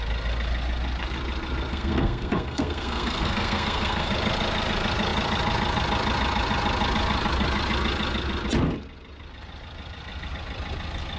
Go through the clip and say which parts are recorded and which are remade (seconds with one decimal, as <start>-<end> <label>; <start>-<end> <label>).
0.0-1.7 recorded; 1.7-4.1 remade; 4.1-11.2 recorded